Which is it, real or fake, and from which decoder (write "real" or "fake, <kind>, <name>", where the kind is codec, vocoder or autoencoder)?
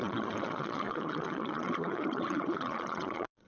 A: fake, vocoder, Vocos